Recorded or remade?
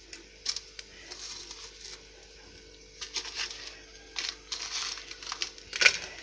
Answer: recorded